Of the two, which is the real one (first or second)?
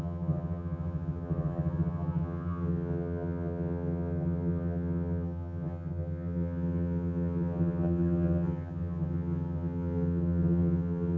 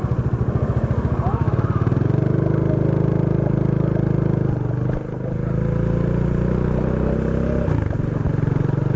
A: second